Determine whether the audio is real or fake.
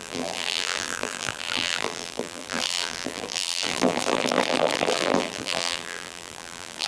fake